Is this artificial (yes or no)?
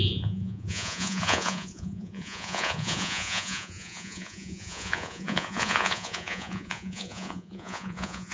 yes